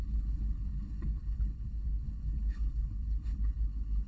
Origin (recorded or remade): remade